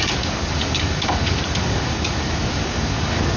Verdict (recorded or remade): remade